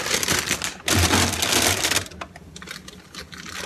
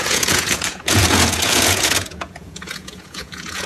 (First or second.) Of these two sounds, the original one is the first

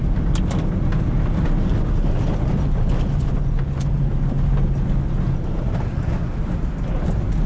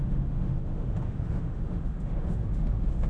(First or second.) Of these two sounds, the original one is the first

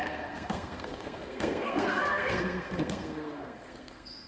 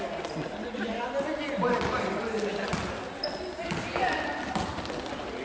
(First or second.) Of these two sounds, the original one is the second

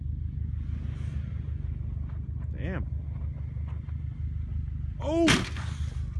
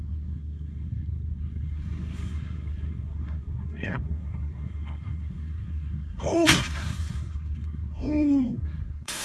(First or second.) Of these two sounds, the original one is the first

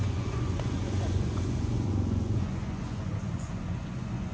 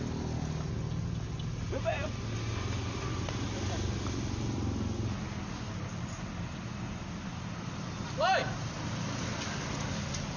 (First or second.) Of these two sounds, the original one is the second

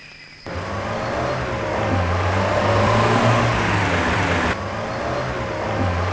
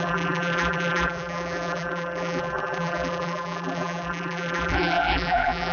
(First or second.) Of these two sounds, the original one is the first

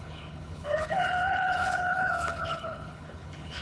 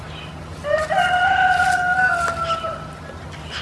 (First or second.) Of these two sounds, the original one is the second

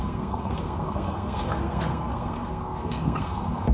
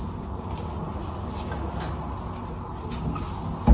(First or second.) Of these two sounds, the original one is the second